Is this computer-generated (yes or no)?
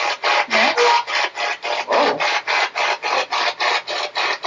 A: no